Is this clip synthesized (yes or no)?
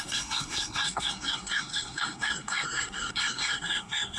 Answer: yes